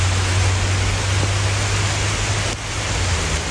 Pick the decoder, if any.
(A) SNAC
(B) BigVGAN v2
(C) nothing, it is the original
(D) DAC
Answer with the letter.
C